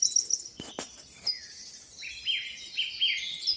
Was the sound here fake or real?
real